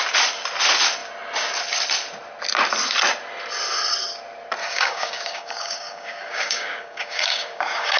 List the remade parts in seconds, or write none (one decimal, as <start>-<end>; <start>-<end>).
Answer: 4.6-8.0